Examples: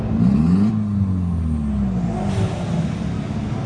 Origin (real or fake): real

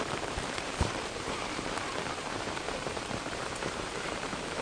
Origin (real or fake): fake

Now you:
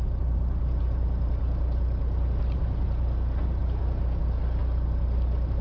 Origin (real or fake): real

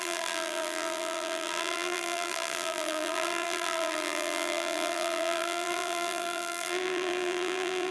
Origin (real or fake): fake